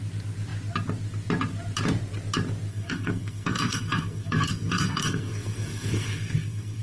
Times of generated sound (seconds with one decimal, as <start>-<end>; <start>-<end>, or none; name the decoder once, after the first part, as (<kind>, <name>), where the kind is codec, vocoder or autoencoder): 2.7-6.8 (codec, SNAC)